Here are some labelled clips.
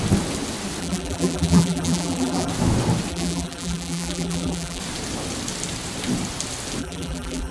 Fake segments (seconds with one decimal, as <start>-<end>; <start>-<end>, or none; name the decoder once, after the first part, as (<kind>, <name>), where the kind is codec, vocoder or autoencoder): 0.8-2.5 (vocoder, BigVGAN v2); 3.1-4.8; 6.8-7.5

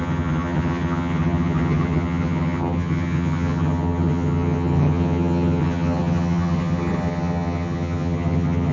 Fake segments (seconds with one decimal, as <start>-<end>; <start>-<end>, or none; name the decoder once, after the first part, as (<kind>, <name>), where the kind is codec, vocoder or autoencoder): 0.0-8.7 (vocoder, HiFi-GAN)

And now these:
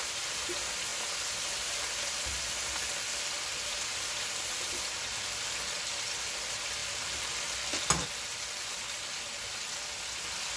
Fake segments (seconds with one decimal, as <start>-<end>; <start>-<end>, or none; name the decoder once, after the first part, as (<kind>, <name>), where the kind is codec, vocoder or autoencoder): none